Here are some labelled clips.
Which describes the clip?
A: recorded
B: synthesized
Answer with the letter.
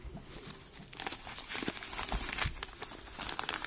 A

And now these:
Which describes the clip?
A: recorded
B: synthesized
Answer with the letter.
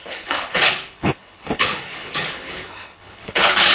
B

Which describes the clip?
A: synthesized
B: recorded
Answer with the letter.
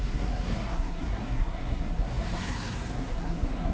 A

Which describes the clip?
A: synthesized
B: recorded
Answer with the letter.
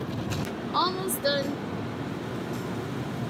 B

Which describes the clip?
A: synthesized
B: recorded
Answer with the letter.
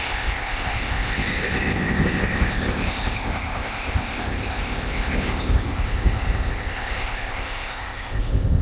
A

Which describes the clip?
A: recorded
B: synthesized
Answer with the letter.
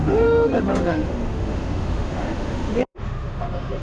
B